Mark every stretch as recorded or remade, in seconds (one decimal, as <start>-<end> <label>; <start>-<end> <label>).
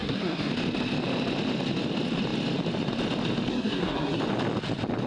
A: 0.0-0.5 remade; 0.5-3.5 recorded; 3.5-4.2 remade; 4.2-5.1 recorded